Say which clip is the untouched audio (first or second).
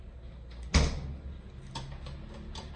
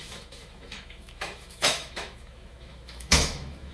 first